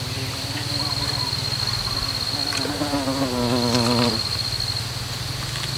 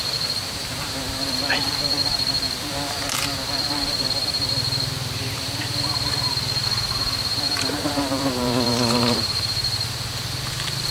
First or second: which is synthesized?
second